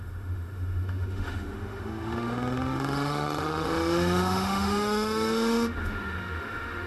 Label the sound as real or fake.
fake